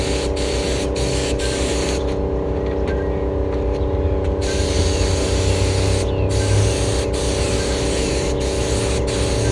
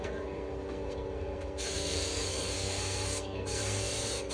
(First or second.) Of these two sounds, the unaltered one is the first